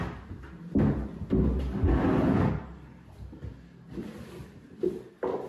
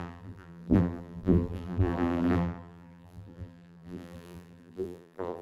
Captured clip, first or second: first